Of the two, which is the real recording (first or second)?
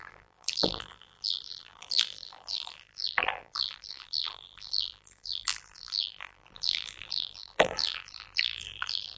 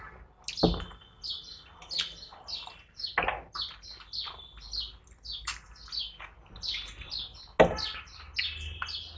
second